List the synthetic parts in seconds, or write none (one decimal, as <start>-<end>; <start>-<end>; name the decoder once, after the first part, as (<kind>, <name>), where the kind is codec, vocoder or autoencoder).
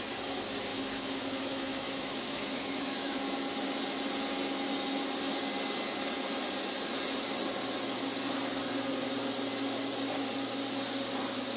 0.7-3.1 (autoencoder, DAC-VAE)